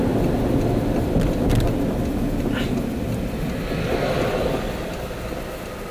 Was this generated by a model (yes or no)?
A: no